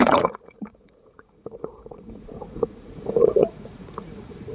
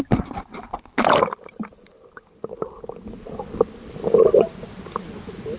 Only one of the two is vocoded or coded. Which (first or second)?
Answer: first